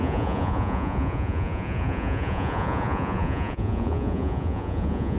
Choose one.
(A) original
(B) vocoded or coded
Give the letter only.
B